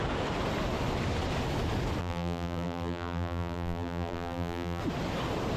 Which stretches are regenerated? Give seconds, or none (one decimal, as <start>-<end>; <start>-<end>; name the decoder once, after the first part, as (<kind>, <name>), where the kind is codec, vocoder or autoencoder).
2.0-4.8 (vocoder, BigVGAN v2)